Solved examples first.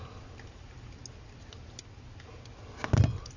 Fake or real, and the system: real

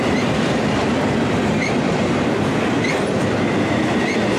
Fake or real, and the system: fake, vocoder, BigVGAN v2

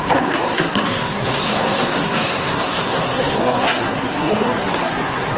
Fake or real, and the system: fake, codec, SNAC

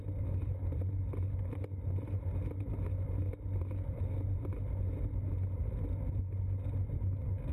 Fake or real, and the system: real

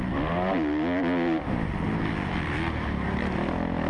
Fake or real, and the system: real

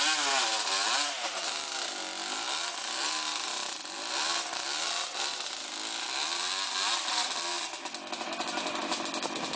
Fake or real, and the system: real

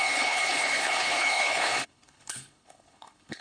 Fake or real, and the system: fake, codec, HILCodec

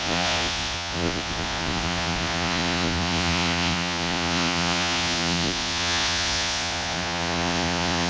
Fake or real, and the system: fake, vocoder, Vocos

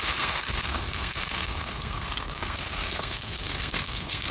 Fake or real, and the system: fake, codec, SNAC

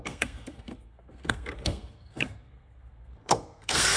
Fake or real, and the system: fake, codec, SNAC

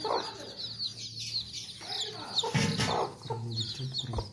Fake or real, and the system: real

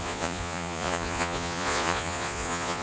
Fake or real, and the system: fake, vocoder, Vocos